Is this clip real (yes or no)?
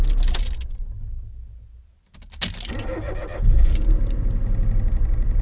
yes